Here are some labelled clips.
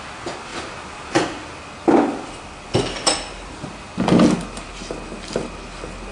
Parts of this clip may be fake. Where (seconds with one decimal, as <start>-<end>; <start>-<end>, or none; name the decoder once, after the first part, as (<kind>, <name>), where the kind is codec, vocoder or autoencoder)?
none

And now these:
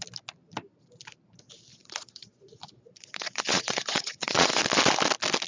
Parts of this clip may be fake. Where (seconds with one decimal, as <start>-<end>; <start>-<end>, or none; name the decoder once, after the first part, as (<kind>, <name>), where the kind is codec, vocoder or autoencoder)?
1.7-4.6 (vocoder, Vocos)

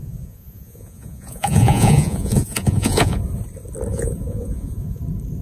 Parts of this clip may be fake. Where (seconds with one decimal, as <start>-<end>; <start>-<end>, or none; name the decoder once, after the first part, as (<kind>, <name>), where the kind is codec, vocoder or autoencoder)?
0.0-3.2 (vocoder, Vocos); 3.9-5.0

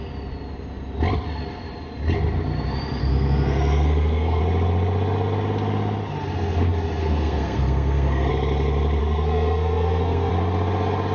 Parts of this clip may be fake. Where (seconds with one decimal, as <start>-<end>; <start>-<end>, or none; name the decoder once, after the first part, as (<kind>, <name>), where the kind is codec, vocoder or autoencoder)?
3.0-4.4 (codec, SNAC); 7.0-8.3; 9.0-10.3

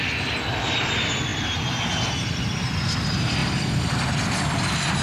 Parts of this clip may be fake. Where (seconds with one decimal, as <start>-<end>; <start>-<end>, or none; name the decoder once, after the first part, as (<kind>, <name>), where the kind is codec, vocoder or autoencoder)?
none